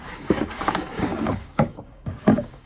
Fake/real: fake